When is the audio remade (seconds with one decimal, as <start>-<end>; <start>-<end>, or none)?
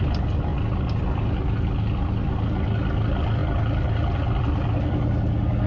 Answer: none